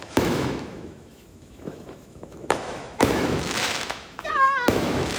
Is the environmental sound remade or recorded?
remade